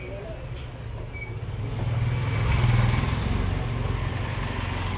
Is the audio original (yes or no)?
yes